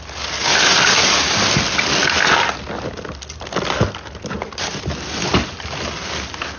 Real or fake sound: real